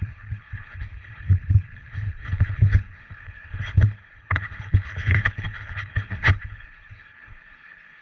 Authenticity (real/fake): fake